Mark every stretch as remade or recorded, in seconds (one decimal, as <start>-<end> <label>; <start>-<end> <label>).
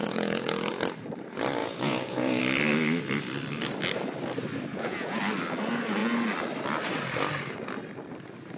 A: 0.0-0.7 remade; 0.7-1.6 recorded; 1.6-2.4 remade; 2.4-4.7 recorded; 4.7-5.2 remade; 5.2-8.6 recorded